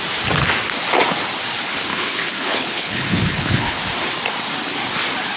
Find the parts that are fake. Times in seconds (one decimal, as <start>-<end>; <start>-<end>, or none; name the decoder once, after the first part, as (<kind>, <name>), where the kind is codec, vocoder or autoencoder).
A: 1.9-3.8 (codec, HILCodec)